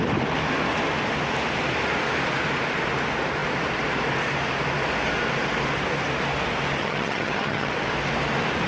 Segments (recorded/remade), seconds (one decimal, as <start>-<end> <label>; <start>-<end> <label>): 0.0-6.8 recorded; 6.8-7.7 remade; 7.7-8.7 recorded